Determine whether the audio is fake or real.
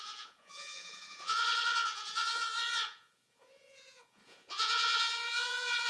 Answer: fake